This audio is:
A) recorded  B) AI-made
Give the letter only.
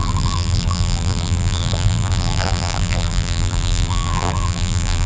B